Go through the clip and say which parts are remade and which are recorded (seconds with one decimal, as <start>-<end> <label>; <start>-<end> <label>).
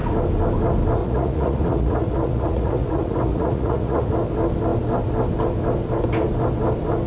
0.0-1.0 recorded; 1.0-4.1 remade; 4.1-7.1 recorded